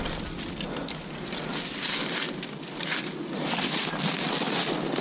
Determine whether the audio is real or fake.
real